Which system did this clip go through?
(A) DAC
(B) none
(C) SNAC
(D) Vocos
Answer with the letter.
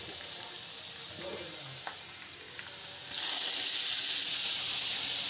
B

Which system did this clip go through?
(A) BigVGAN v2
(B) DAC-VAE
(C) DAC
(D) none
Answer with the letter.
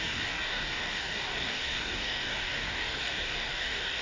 C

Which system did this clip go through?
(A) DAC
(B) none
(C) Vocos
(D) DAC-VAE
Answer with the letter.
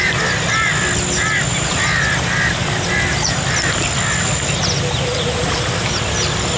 B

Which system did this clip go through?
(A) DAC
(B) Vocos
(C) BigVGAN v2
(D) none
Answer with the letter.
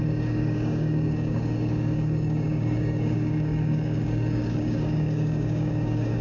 A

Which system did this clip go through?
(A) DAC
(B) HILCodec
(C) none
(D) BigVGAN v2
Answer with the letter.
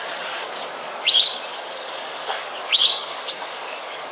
A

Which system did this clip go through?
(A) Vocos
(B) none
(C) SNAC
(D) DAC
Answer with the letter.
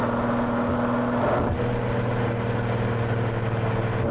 B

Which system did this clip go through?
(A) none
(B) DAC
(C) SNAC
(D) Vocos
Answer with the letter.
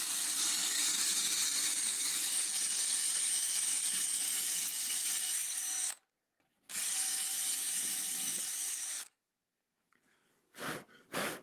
B